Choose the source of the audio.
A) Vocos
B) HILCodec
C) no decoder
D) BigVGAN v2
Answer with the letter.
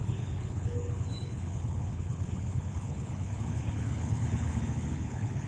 B